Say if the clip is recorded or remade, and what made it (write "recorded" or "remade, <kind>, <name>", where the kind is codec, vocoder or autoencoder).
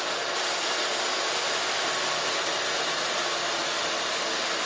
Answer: recorded